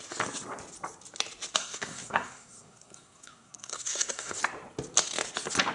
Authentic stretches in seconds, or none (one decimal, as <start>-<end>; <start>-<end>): 0.0-1.6; 4.4-5.7